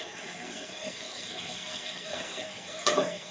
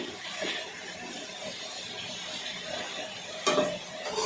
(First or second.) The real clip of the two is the second